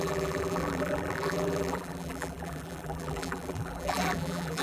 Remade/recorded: remade